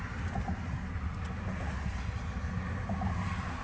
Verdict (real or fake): real